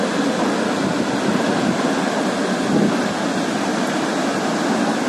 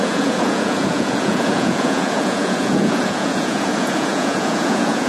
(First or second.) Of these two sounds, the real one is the first